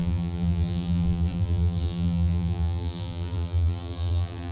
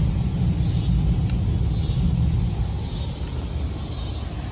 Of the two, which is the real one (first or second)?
second